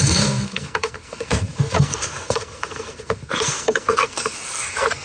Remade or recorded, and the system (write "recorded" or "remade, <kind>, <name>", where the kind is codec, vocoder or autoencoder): remade, codec, SNAC